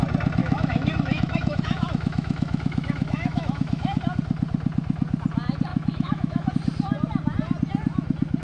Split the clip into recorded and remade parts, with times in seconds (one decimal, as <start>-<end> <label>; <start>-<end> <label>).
0.0-0.4 recorded; 0.4-4.0 remade; 4.0-5.7 recorded; 5.7-6.5 remade; 6.5-8.4 recorded